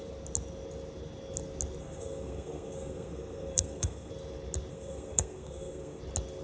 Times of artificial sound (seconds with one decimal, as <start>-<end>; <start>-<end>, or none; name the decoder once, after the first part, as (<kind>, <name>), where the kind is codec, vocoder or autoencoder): 1.8-4.1 (codec, SNAC); 4.7-6.0